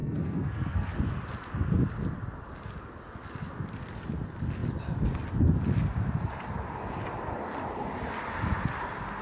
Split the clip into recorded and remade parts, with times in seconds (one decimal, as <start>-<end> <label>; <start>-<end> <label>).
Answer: 0.0-0.9 remade; 0.9-9.2 recorded